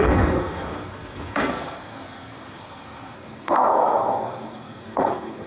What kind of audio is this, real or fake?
fake